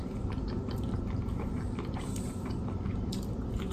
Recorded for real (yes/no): no